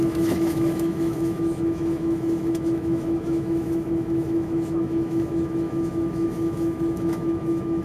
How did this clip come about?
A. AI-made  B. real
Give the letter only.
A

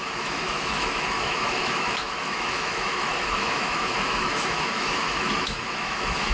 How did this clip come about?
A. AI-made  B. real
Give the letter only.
A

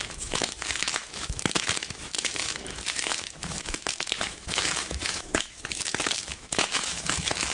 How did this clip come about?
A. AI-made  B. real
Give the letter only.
A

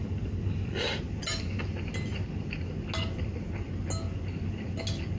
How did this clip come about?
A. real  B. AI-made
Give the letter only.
A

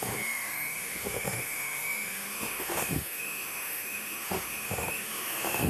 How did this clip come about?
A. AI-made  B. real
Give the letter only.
A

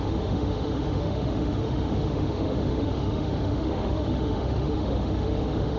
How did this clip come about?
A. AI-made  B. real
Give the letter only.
A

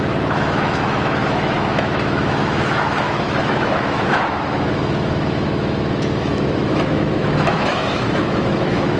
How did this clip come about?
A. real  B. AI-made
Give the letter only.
B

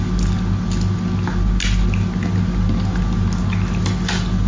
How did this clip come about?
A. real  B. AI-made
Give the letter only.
A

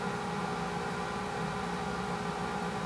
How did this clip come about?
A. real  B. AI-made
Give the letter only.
A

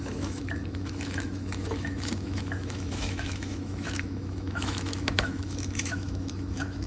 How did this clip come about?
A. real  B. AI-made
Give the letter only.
B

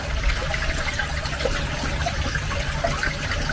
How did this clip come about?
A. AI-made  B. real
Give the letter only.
B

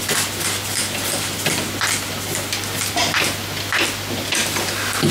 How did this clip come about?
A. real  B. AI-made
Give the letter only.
A